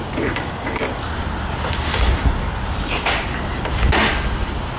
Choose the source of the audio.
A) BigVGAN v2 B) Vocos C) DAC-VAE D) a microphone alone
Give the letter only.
D